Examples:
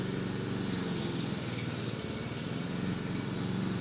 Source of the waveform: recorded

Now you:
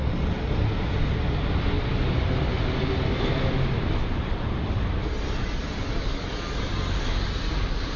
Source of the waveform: recorded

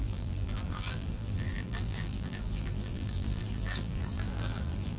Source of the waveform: remade